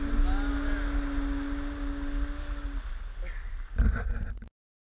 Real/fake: real